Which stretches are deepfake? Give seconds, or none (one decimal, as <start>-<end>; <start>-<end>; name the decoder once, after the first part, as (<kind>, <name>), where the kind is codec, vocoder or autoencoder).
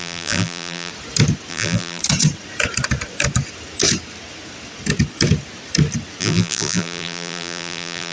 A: 0.0-0.9 (vocoder, BigVGAN v2); 1.5-2.0; 6.2-8.1